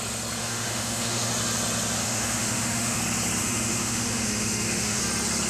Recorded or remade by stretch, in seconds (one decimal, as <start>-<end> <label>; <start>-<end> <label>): 0.0-0.4 recorded; 0.4-1.3 remade; 1.3-2.0 recorded; 2.0-3.0 remade; 3.0-3.4 recorded; 3.4-5.0 remade; 5.0-5.5 recorded